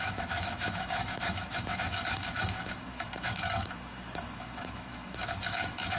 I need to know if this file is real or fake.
fake